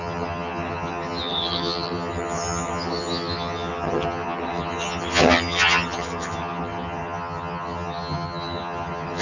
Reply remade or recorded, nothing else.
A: remade